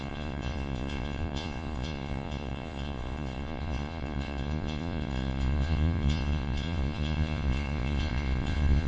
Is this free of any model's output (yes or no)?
no